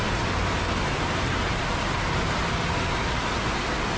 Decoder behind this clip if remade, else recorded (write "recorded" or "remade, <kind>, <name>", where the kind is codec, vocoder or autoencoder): recorded